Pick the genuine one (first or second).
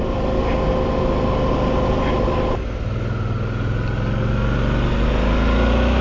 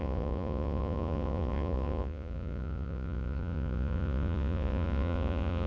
first